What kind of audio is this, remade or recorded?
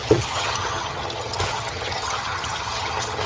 remade